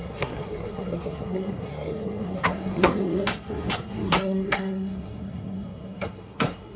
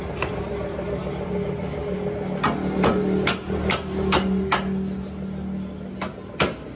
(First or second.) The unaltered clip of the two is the second